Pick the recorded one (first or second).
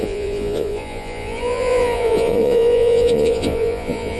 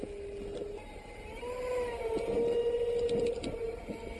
second